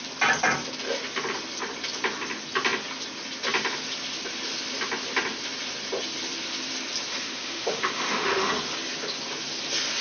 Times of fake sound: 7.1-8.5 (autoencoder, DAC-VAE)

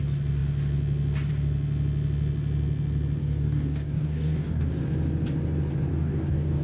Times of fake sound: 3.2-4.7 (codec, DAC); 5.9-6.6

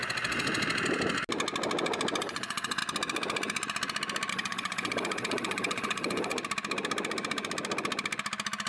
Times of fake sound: 2.2-2.8 (vocoder, WaveNeXt); 4.3-6.3

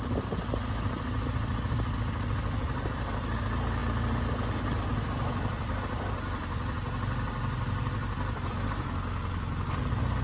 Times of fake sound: none